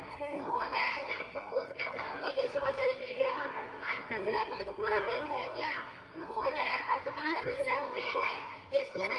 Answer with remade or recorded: remade